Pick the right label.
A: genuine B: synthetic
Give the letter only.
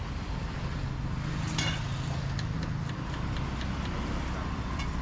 A